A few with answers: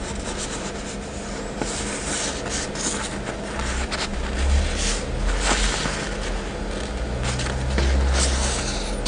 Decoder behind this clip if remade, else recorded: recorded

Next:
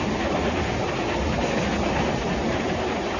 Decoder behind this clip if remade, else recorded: recorded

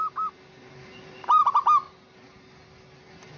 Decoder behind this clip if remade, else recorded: recorded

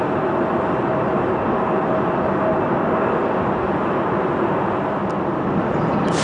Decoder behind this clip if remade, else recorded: recorded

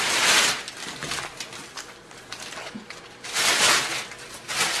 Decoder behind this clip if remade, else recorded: recorded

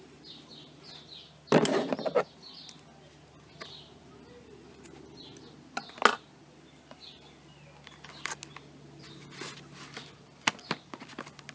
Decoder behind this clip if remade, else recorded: recorded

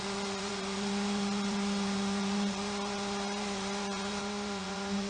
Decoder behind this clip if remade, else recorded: remade, vocoder, Vocos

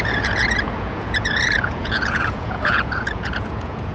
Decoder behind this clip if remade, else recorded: remade, vocoder, Vocos